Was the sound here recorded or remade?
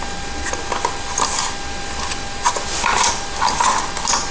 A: recorded